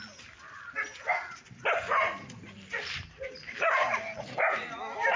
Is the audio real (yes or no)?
yes